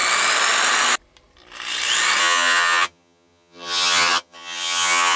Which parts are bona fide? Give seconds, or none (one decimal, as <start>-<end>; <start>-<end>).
0.0-2.2